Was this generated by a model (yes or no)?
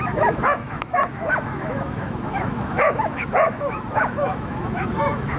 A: yes